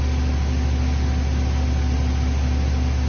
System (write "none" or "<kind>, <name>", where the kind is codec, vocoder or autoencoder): none